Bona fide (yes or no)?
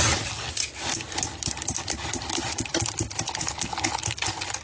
yes